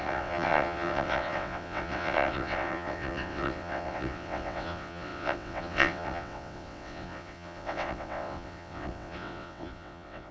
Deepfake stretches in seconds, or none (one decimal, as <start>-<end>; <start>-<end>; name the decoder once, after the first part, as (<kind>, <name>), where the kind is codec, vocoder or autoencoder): 0.0-10.3 (vocoder, WaveNeXt)